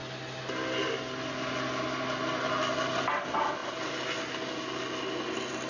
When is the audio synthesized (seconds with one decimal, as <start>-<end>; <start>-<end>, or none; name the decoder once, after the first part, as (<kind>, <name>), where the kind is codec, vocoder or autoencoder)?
none